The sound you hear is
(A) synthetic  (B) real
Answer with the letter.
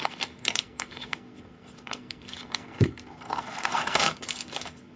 A